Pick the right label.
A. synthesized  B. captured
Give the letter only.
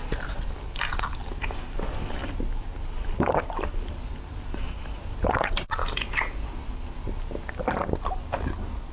B